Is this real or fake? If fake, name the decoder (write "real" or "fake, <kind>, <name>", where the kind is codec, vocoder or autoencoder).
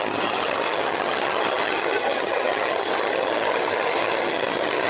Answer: fake, vocoder, HiFi-GAN